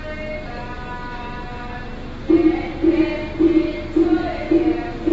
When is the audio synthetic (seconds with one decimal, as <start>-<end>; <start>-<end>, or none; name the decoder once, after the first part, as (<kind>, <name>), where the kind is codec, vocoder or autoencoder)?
none